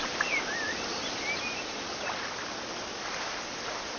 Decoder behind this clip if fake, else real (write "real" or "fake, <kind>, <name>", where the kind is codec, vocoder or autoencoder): real